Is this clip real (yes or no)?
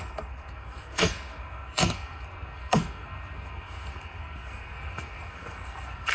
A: no